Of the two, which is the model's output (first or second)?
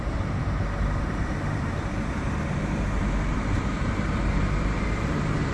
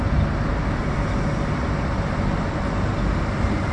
first